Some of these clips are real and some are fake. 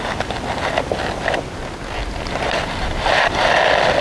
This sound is real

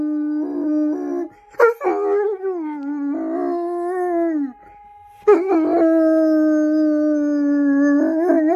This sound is real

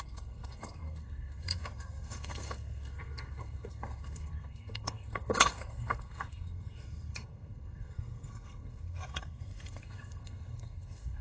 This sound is fake